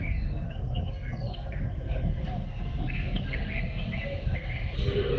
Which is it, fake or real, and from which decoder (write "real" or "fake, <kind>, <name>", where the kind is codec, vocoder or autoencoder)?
fake, codec, SNAC